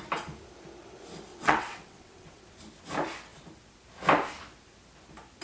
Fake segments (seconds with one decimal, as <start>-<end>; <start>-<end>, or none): 1.3-2.4